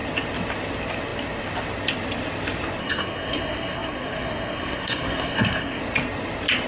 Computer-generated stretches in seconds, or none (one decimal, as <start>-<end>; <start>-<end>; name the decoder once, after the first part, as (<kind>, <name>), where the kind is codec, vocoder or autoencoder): 2.8-5.8 (codec, SNAC)